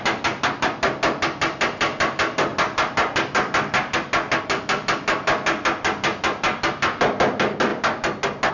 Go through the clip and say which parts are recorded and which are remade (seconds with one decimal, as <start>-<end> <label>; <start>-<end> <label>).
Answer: 0.0-8.5 recorded